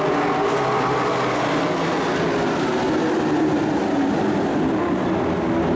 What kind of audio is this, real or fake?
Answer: real